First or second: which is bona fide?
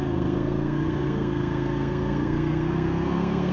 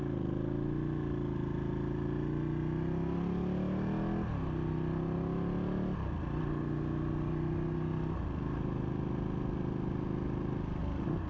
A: second